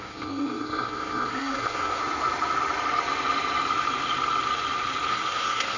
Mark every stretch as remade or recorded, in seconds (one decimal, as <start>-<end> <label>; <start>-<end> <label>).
0.0-2.0 remade; 2.0-5.1 recorded; 5.1-5.8 remade